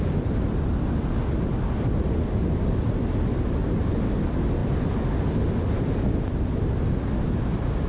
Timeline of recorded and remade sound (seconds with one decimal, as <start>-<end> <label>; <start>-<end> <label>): 0.0-7.9 recorded